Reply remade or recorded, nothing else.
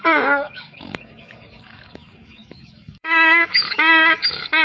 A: remade